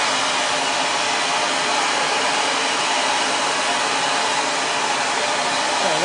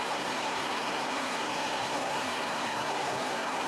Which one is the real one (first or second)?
first